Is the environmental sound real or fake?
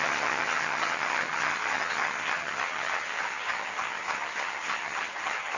fake